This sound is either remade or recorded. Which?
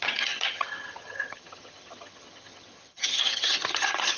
remade